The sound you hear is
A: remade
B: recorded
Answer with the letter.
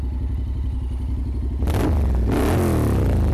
B